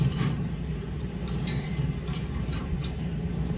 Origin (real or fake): fake